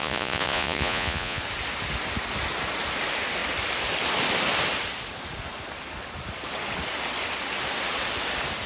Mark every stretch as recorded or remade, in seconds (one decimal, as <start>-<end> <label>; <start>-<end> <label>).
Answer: 0.0-1.4 remade; 1.4-8.7 recorded